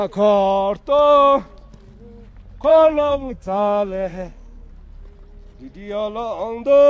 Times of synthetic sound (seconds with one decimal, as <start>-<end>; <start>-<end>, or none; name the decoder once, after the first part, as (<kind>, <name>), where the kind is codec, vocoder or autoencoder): 2.7-4.7 (codec, SNAC)